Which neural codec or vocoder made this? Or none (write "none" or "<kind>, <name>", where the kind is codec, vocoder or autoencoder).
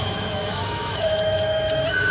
autoencoder, DAC-VAE